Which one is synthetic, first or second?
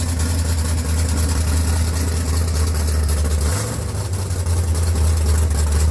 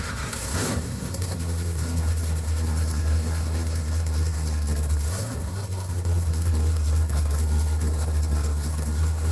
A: second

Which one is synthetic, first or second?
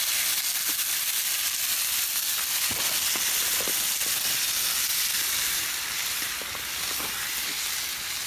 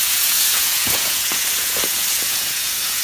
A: second